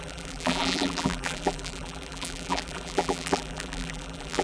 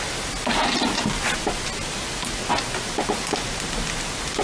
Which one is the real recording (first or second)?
second